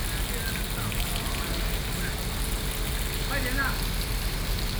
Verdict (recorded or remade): recorded